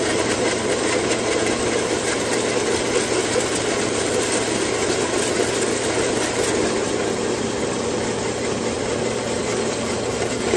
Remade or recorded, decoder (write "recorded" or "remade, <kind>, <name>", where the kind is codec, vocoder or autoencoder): recorded